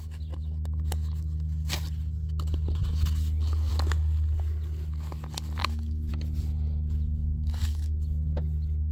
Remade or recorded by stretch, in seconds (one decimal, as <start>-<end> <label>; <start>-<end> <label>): 0.0-5.6 recorded; 5.6-6.1 remade; 6.1-7.2 recorded; 7.2-7.9 remade; 7.9-8.9 recorded